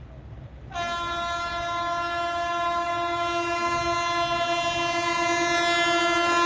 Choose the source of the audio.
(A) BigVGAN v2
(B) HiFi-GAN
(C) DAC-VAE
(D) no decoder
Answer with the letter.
D